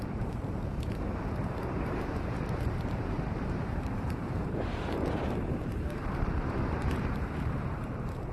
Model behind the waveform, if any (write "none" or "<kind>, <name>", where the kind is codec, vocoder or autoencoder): vocoder, BigVGAN v2